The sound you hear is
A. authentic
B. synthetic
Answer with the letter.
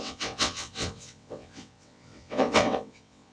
B